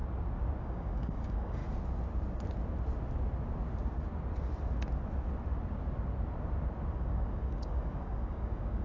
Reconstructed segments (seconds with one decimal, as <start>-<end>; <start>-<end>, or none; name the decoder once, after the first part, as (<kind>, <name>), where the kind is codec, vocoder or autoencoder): 0.6-1.6 (codec, DAC); 6.9-8.8